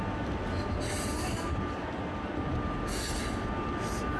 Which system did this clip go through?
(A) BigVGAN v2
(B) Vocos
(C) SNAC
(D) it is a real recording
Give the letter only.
D